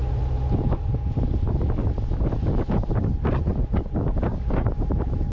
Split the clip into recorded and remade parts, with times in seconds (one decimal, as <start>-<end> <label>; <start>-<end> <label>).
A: 0.0-1.8 recorded; 1.8-2.6 remade; 2.6-3.5 recorded; 3.5-4.7 remade; 4.7-5.3 recorded